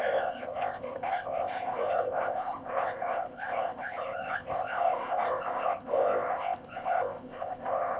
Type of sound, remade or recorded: remade